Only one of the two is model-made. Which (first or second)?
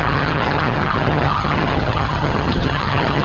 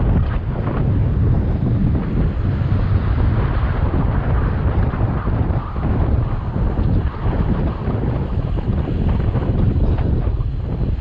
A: first